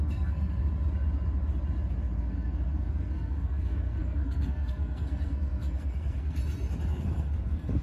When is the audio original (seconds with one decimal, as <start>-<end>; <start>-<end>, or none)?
0.6-2.2; 6.4-6.9